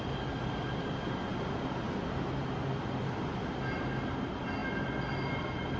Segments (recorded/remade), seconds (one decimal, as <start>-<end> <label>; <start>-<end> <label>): 0.0-5.8 recorded